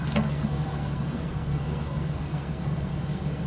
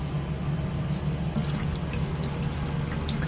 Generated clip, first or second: first